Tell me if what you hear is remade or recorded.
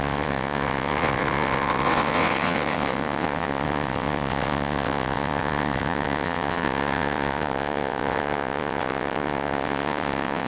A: remade